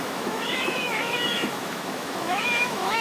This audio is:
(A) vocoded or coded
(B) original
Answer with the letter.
A